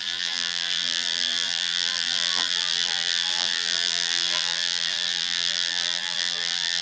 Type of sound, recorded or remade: remade